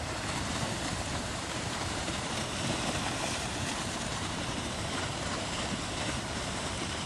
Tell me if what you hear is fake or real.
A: fake